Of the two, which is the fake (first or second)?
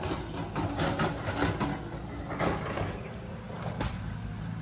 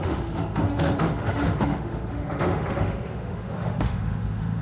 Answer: second